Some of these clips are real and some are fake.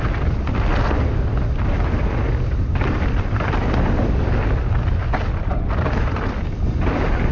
real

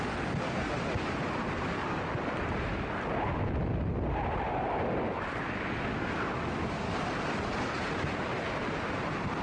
real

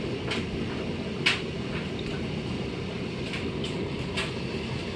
real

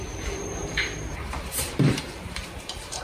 fake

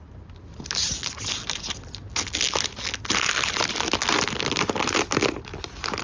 real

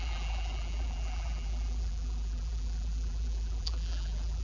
fake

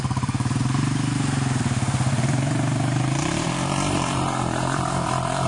fake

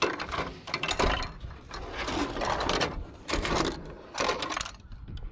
fake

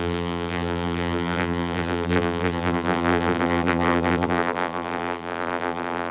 fake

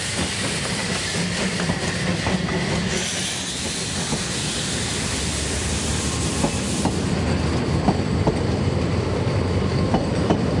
real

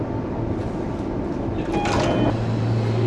real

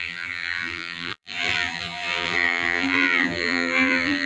fake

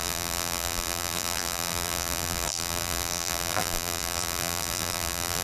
fake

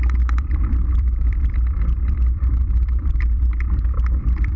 fake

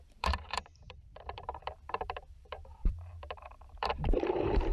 fake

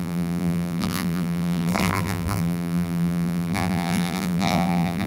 fake